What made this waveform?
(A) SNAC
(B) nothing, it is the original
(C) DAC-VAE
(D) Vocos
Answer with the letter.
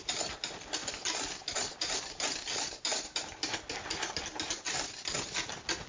B